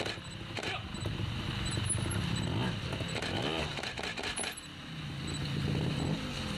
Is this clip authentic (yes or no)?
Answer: yes